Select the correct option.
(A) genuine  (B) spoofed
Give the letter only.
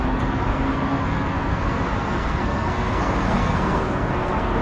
B